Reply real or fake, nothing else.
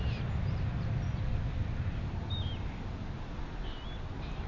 real